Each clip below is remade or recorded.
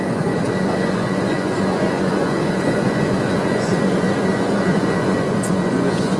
remade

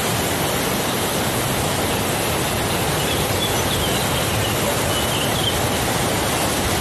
recorded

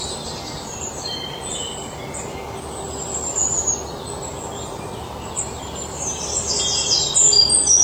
recorded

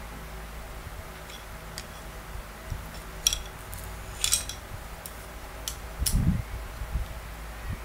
recorded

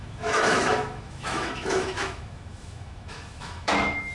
remade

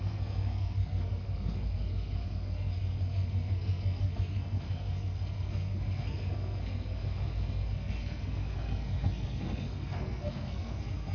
remade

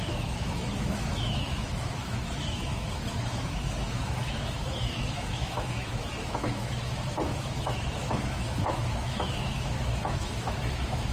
remade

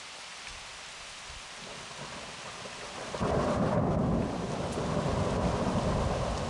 recorded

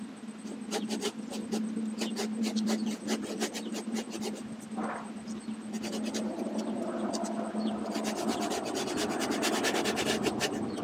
recorded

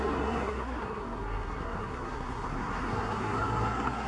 remade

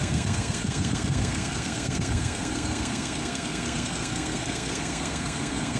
remade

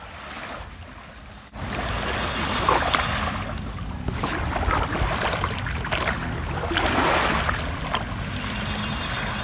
recorded